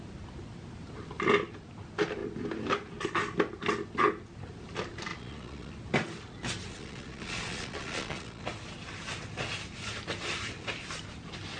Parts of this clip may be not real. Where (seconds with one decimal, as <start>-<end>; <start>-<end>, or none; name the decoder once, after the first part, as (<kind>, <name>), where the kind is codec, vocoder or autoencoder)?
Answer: 5.1-5.7 (vocoder, Vocos); 6.7-8.4